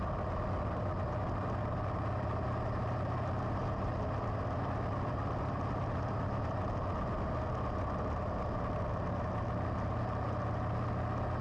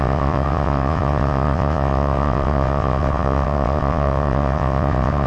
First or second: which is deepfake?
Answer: second